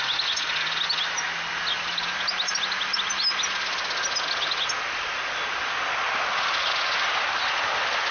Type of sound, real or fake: real